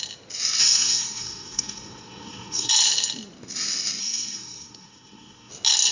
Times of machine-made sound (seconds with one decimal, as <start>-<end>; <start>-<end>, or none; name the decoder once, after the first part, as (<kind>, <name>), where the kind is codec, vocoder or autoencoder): 0.6-2.7 (codec, SNAC); 4.0-5.5